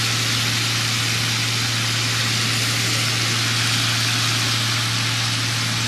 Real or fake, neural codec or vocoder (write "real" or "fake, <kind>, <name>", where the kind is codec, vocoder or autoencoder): real